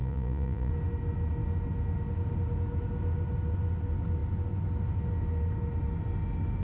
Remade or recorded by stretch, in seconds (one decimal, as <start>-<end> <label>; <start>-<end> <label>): 0.0-0.7 remade; 0.7-6.6 recorded